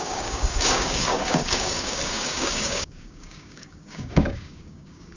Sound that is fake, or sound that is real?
fake